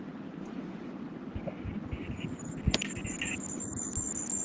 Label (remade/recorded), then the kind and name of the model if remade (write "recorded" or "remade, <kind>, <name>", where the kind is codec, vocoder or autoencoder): recorded